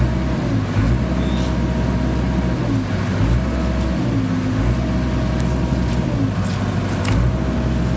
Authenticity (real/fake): real